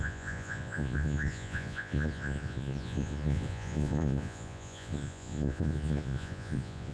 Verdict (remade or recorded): remade